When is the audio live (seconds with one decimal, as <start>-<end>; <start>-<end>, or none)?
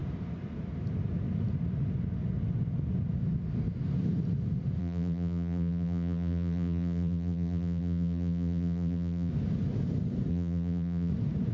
0.0-4.8; 9.3-10.3; 11.1-11.5